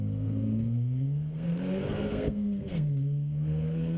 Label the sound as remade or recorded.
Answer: remade